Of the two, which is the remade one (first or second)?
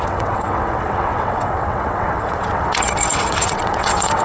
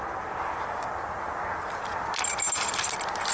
first